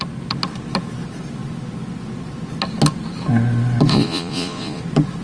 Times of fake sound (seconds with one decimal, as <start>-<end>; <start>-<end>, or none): 3.9-4.8